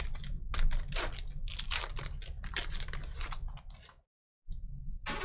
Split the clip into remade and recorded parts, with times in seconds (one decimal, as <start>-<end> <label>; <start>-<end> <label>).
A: 0.0-5.2 recorded